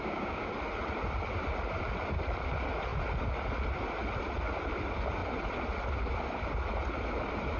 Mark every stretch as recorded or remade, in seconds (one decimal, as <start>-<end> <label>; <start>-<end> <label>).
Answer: 0.0-0.5 remade; 0.5-7.6 recorded